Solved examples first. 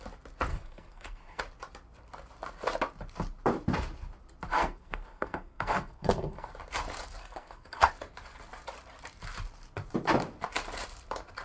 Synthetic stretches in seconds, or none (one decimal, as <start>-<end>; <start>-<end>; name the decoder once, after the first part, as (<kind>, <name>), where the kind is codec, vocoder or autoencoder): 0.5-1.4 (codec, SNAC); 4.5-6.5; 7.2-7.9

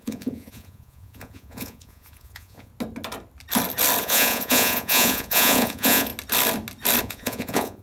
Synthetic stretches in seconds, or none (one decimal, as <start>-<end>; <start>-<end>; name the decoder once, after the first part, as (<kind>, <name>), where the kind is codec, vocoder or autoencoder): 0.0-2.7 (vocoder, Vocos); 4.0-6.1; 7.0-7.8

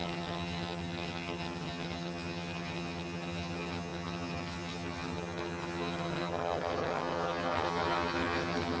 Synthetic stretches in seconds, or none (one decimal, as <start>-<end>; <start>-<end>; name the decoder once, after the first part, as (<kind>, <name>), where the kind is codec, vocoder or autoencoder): 0.0-8.8 (vocoder, HiFi-GAN)

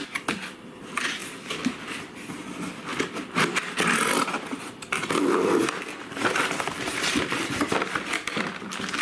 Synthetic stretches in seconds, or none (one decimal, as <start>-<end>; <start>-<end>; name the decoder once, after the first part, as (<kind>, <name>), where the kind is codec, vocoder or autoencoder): none

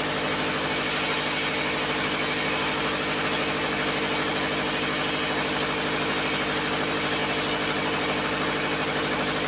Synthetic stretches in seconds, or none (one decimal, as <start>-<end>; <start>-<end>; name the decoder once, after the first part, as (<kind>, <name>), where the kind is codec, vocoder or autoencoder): none